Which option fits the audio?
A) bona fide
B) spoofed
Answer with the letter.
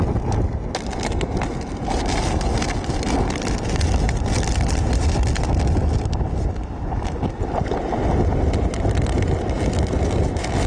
A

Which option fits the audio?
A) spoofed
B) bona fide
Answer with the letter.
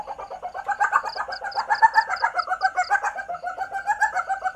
B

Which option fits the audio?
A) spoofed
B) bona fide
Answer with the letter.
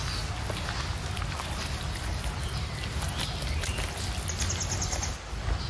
B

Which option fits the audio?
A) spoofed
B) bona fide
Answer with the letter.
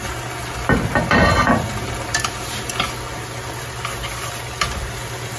B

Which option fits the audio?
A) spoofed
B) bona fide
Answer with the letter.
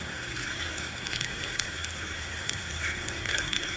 A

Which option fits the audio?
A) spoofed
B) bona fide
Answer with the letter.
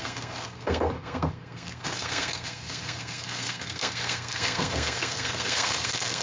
A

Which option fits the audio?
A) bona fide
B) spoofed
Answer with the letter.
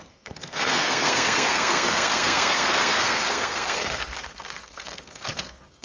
B